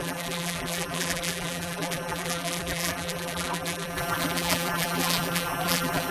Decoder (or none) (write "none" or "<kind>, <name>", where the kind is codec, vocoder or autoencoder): vocoder, BigVGAN v2